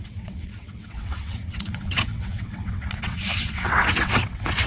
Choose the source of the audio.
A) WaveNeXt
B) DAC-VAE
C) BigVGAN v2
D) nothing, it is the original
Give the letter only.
A